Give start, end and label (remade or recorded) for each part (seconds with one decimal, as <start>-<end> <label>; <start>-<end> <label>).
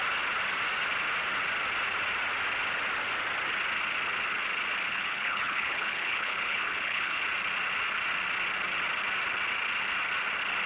0.0-4.9 recorded; 4.9-7.2 remade; 7.2-10.7 recorded